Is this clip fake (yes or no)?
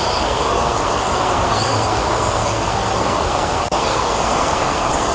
yes